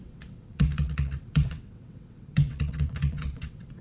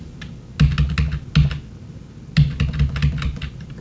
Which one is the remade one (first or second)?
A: first